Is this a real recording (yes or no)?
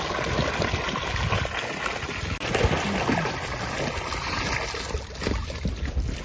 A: yes